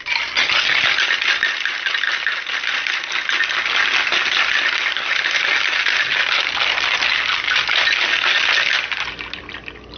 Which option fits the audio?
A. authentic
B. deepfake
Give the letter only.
A